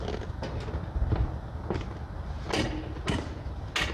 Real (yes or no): yes